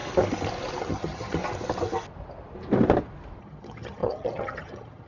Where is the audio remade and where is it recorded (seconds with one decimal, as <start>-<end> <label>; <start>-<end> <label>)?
0.0-0.8 recorded; 0.8-1.4 remade; 1.4-3.4 recorded; 3.4-5.1 remade